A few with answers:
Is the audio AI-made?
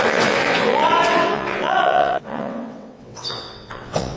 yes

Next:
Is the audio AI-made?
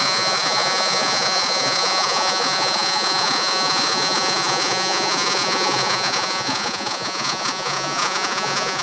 yes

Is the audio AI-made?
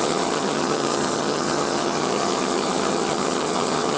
yes